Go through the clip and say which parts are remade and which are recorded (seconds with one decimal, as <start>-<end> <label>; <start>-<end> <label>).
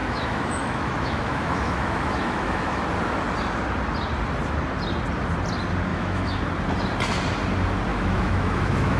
0.0-2.8 remade; 2.8-5.9 recorded; 5.9-6.4 remade; 6.4-7.9 recorded; 7.9-9.0 remade